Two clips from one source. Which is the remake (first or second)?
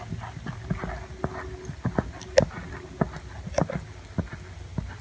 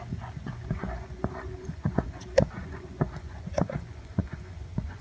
second